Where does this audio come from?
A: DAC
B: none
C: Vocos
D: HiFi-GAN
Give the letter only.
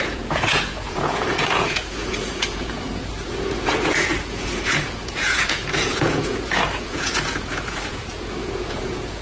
C